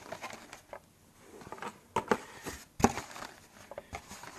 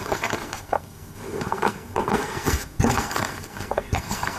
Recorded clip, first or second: first